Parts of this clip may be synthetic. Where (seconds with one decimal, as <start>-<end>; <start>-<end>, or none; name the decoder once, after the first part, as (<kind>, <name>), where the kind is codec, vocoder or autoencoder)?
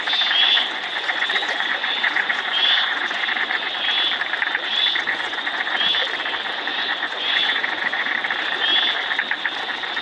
0.4-3.6 (vocoder, Vocos); 4.7-5.9; 6.7-8.1